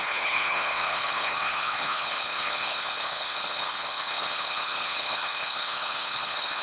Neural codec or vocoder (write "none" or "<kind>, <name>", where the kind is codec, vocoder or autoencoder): codec, HILCodec